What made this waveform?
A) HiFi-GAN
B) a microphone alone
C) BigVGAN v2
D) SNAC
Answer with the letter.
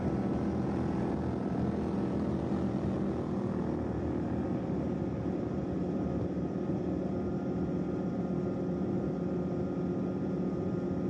B